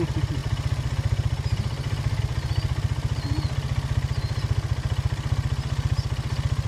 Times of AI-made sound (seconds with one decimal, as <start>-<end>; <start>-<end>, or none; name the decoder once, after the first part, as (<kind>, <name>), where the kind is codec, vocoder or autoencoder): none